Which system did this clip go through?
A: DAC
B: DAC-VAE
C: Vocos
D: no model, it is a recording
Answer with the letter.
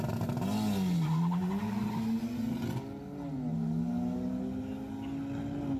D